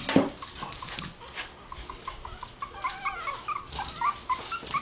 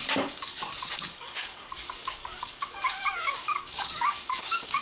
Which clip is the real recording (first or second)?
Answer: first